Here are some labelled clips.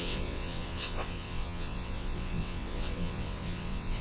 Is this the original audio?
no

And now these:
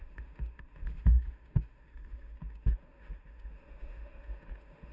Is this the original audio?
no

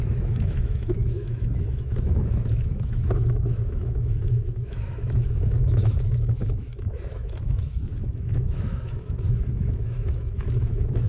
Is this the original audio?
no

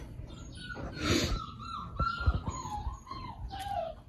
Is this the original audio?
yes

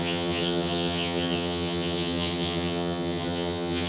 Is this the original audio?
no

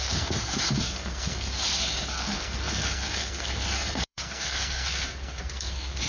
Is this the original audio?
no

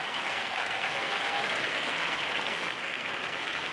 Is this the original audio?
no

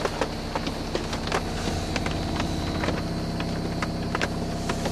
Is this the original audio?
yes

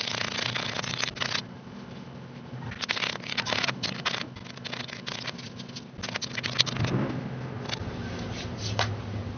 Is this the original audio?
yes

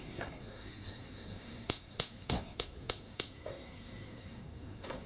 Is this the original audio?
no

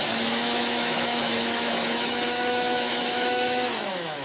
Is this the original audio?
no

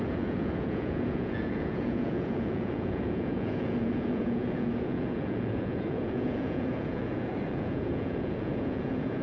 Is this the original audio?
no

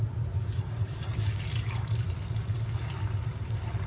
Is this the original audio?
no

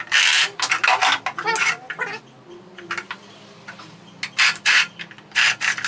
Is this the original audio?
yes